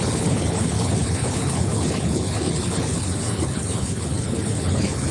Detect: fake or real fake